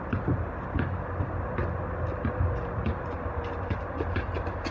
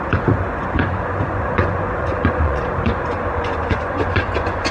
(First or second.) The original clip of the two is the first